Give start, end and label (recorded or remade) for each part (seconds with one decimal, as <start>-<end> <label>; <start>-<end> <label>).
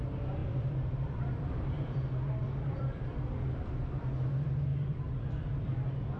0.0-0.4 recorded; 0.4-4.1 remade; 4.1-4.7 recorded; 4.7-6.2 remade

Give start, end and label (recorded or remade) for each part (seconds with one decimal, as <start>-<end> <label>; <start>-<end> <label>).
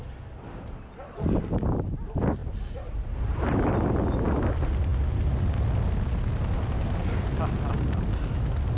0.0-2.4 recorded; 2.4-3.7 remade; 3.7-8.8 recorded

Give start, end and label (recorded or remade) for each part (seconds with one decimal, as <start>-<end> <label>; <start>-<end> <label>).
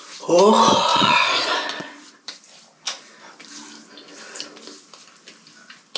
0.0-0.9 recorded; 0.9-2.3 remade; 2.3-6.0 recorded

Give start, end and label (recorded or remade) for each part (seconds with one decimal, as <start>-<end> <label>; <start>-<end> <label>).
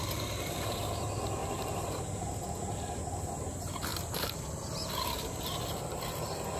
0.0-1.4 recorded; 1.4-3.3 remade; 3.3-3.9 recorded; 3.9-4.4 remade; 4.4-6.6 recorded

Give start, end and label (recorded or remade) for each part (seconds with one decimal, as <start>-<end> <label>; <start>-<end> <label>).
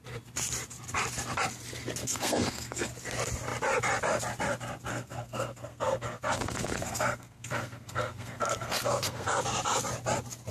0.0-2.0 recorded; 2.0-2.9 remade; 2.9-4.9 recorded; 4.9-9.4 remade; 9.4-10.5 recorded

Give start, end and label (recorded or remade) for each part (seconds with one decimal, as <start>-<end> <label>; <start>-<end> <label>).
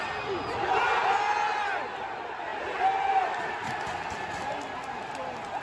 0.0-5.6 recorded